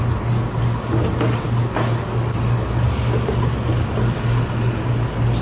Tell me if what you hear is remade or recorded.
recorded